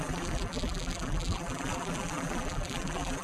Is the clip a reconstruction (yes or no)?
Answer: yes